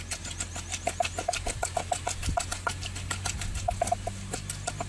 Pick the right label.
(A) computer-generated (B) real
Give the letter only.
B